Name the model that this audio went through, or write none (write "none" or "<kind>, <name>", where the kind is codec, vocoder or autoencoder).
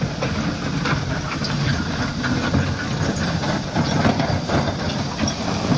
none